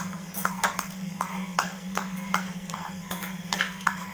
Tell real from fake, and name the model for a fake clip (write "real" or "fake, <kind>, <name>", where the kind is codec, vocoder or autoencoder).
fake, codec, SNAC